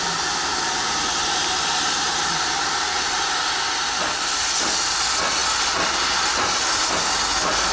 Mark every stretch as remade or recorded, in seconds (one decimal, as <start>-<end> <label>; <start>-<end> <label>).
0.0-7.7 recorded